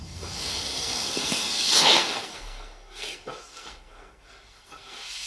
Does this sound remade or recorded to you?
remade